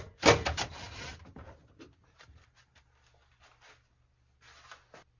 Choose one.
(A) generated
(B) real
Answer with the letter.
B